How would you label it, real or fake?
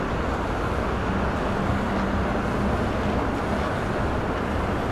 real